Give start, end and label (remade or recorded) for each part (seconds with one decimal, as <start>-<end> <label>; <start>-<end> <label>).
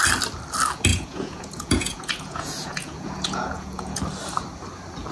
0.0-0.9 recorded; 0.9-4.0 remade; 4.0-5.1 recorded